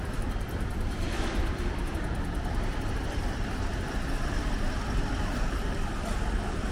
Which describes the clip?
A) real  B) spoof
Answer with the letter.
B